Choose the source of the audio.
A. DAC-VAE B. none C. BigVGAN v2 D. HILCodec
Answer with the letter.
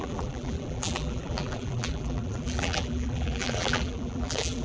C